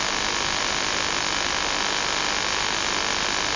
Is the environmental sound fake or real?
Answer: real